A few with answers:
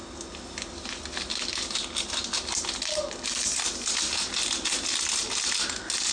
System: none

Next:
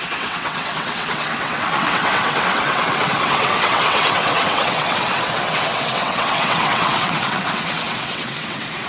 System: vocoder, WaveNeXt